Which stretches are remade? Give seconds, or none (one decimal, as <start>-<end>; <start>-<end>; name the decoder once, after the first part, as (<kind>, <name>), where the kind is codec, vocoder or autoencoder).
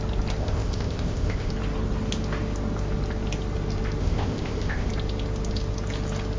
0.4-1.5 (codec, ZipCodec); 4.0-4.9